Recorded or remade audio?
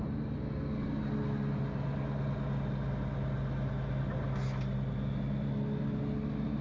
recorded